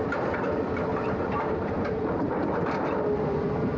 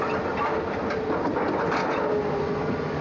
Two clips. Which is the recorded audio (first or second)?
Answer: second